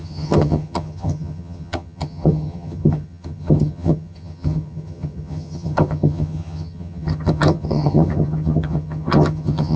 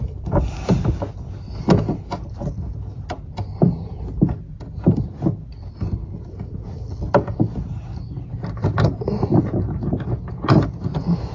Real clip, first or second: second